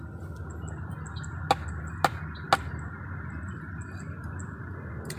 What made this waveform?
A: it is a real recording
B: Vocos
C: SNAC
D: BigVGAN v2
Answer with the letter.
A